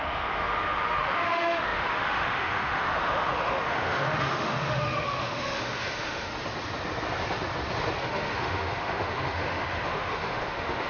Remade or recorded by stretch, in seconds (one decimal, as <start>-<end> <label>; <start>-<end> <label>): 0.0-6.3 remade; 6.3-8.0 recorded; 8.0-10.9 remade